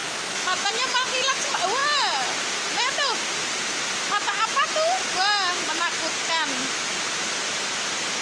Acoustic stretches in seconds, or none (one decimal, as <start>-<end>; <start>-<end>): 0.7-8.2

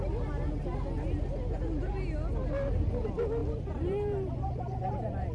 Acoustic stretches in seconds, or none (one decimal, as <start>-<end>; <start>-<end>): 0.0-3.4

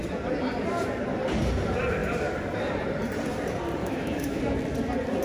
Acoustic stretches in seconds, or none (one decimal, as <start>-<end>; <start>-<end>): 0.0-3.8; 4.4-5.2

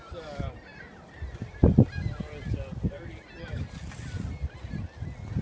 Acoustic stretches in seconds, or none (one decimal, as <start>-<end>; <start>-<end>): 0.0-5.4

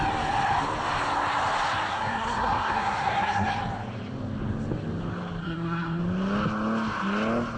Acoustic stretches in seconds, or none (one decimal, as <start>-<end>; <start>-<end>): 0.0-1.9; 3.5-5.4; 6.0-7.6

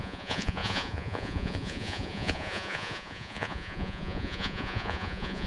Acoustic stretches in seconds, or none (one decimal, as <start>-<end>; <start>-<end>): none

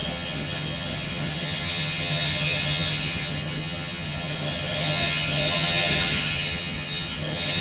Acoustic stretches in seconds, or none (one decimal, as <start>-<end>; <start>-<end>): none

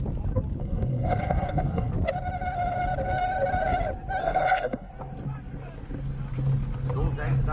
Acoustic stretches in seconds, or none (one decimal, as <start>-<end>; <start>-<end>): 0.0-0.6; 1.9-4.2; 4.9-7.5